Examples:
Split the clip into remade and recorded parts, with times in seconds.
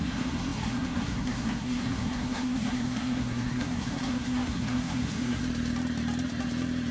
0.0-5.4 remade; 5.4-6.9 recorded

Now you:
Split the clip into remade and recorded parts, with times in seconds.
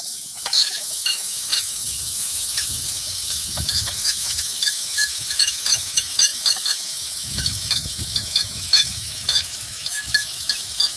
0.0-11.0 remade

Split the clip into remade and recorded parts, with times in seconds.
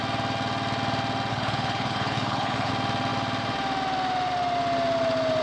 0.0-1.3 recorded; 1.3-2.7 remade; 2.7-5.4 recorded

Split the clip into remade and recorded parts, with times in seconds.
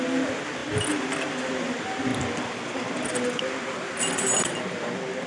0.0-0.6 recorded; 0.6-1.5 remade; 1.5-2.1 recorded; 2.1-3.4 remade; 3.4-5.3 recorded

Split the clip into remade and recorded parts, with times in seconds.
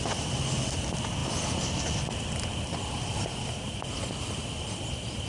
0.0-5.3 recorded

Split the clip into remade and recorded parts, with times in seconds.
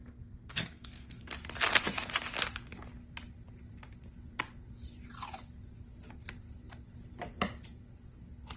0.0-1.2 remade; 1.2-8.6 recorded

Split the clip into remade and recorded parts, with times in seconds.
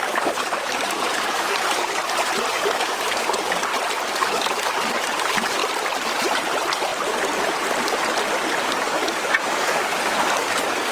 0.0-2.0 remade; 2.0-2.5 recorded; 2.5-3.7 remade; 3.7-4.2 recorded; 4.2-5.6 remade; 5.6-8.6 recorded; 8.6-10.9 remade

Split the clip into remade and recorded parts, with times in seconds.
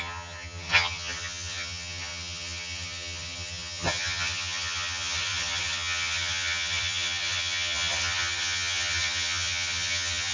0.0-10.3 remade